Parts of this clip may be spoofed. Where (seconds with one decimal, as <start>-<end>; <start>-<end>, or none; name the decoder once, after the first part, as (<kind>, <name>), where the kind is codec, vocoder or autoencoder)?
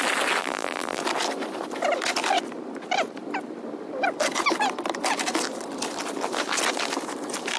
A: 0.4-1.0 (vocoder, BigVGAN v2)